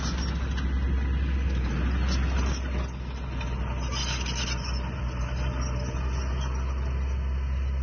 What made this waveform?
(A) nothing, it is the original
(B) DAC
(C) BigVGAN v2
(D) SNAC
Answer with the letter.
A